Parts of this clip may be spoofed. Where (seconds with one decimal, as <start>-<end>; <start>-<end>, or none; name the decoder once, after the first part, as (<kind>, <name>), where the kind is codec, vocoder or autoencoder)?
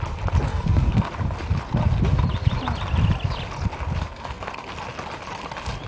0.5-1.1 (codec, SNAC); 4.0-4.7